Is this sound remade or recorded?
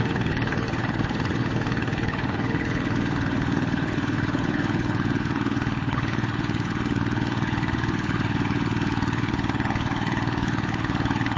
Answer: remade